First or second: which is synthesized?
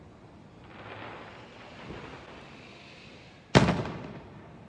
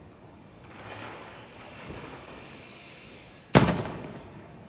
second